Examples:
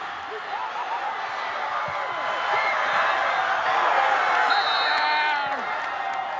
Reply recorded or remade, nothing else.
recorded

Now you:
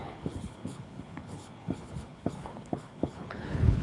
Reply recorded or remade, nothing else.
remade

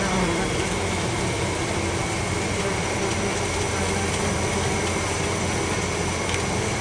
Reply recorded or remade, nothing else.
recorded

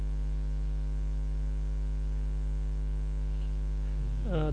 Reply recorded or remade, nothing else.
recorded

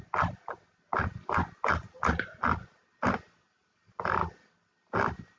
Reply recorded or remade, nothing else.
recorded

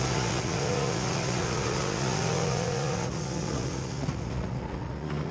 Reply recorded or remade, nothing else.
remade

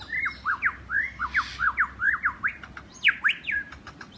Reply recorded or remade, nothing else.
recorded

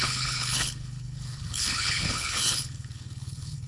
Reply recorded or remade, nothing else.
remade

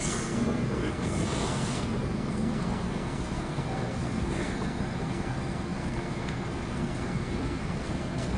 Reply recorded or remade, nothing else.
remade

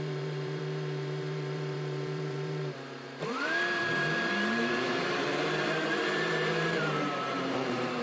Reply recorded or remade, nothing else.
remade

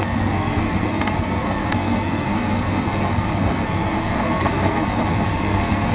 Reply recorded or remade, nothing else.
remade